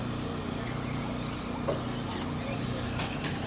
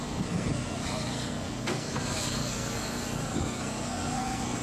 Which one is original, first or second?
first